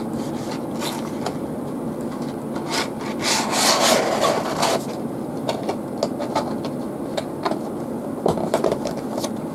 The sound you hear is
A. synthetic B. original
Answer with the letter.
B